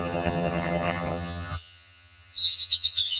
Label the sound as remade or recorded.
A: remade